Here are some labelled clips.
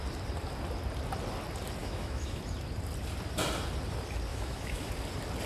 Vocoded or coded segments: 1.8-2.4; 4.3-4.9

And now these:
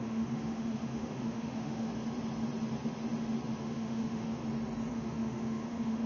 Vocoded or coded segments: 0.0-1.9; 3.6-4.4; 4.9-6.1

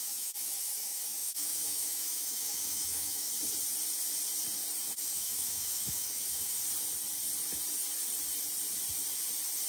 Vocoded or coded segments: 0.0-3.3; 5.0-6.6

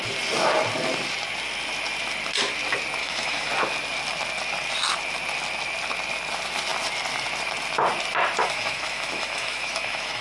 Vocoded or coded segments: 3.0-3.5; 8.4-10.2

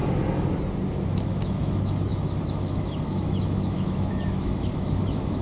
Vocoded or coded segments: 0.9-5.4

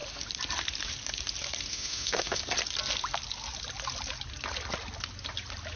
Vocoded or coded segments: 1.7-2.4